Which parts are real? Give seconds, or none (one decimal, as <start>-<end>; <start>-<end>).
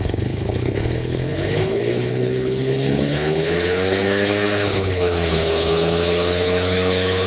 none